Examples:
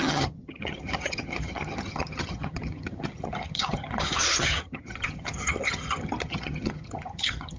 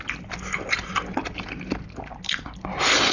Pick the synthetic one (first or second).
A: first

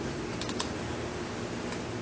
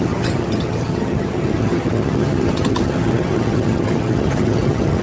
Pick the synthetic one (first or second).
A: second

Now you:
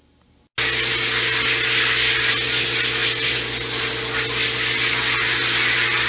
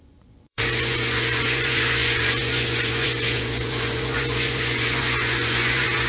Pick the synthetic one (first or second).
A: second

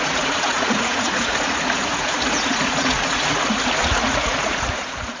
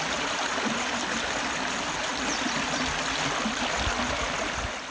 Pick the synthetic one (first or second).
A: first